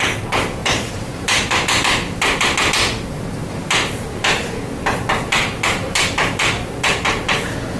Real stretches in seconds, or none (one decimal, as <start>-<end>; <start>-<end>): 0.0-0.6; 2.2-7.8